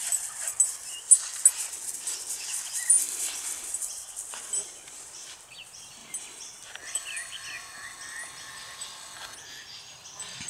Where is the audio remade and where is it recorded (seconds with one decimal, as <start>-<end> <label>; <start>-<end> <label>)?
0.0-10.5 recorded